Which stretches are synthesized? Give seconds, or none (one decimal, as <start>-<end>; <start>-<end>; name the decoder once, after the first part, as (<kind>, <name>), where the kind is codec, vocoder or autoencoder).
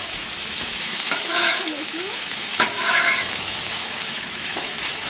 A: 0.0-5.1 (autoencoder, DAC-VAE)